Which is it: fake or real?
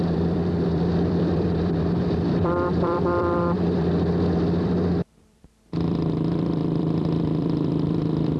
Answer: fake